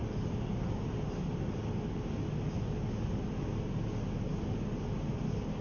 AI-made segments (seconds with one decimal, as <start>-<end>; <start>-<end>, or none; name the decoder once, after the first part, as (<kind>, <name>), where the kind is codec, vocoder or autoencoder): none